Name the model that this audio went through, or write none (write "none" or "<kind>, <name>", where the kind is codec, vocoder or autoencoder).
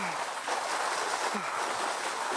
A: none